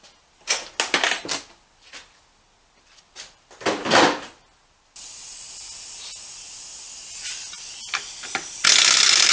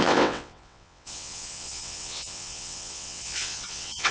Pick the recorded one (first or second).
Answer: first